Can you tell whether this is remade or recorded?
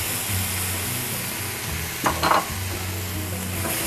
recorded